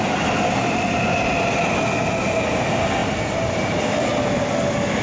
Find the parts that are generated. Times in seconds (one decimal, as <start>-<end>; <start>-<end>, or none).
none